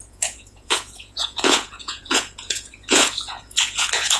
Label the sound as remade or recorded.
remade